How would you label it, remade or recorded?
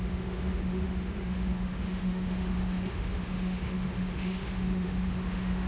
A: remade